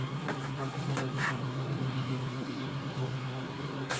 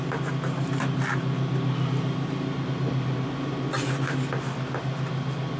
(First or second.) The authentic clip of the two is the second